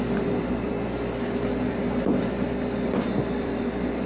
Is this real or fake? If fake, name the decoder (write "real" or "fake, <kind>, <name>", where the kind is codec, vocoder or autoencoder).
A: fake, vocoder, BigVGAN v2